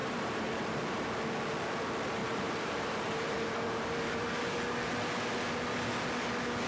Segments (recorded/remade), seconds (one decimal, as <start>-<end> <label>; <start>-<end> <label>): 0.0-0.8 remade; 0.8-2.2 recorded; 2.2-4.5 remade; 4.5-6.7 recorded